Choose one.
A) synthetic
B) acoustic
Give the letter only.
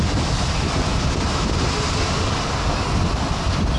B